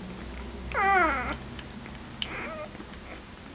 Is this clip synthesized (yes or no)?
no